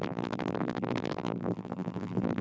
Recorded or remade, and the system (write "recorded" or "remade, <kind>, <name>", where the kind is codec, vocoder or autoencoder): remade, vocoder, BigVGAN v2